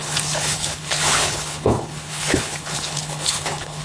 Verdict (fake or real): fake